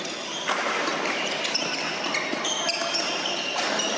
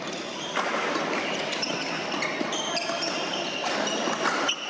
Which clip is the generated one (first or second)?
second